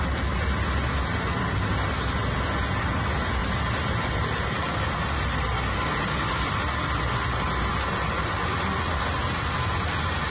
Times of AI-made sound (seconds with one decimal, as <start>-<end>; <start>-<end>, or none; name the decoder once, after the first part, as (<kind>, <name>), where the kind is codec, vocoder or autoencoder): none